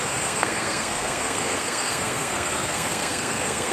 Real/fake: fake